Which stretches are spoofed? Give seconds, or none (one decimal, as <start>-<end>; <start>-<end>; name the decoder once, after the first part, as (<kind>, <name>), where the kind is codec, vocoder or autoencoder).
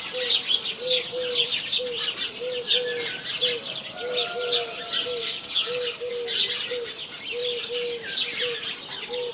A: 5.2-6.1 (codec, DAC)